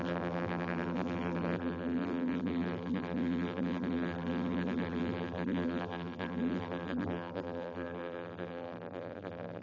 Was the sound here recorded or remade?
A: remade